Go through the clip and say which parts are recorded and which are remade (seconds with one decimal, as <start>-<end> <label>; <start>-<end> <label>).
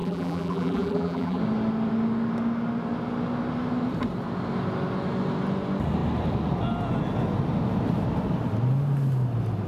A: 0.0-1.4 remade; 1.4-9.7 recorded